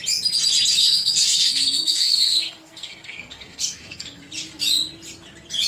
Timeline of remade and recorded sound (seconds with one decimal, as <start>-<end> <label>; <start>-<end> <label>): 0.0-0.8 recorded; 0.8-4.2 remade; 4.2-5.7 recorded